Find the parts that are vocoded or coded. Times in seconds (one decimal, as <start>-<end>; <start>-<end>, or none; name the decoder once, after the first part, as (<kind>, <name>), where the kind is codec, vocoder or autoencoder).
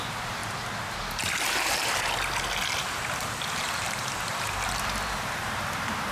0.0-0.4 (vocoder, BigVGAN v2); 4.1-6.1